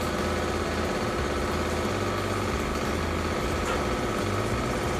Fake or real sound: real